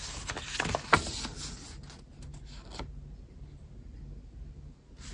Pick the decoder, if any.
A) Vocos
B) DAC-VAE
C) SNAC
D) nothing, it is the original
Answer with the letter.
D